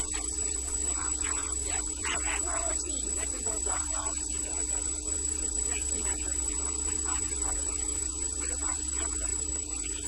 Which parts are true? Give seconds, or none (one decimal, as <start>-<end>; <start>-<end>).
none